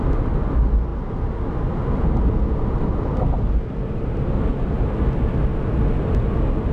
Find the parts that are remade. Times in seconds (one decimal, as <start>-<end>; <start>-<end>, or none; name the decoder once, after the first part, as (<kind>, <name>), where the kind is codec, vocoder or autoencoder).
none